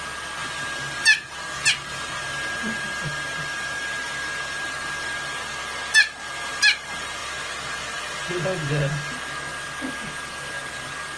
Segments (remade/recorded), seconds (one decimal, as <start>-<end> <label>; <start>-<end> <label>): 0.0-11.2 recorded